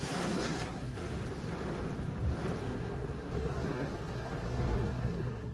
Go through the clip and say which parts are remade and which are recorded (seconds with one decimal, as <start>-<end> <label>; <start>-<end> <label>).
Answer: 0.0-1.1 remade; 1.1-2.6 recorded; 2.6-5.5 remade